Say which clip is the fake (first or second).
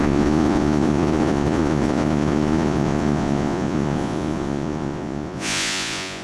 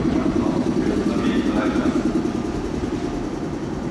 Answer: first